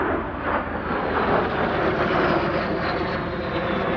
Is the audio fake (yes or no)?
no